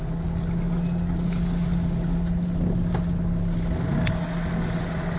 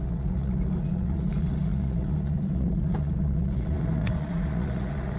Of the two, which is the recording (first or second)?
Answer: first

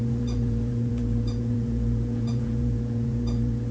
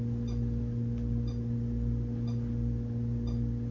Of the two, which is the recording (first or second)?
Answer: second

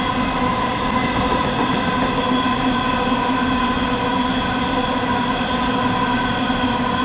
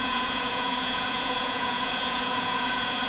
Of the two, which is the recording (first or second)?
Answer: first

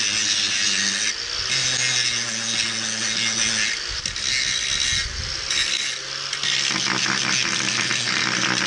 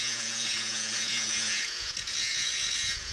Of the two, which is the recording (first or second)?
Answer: first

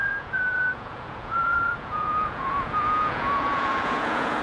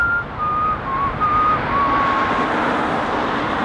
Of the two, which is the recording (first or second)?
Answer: second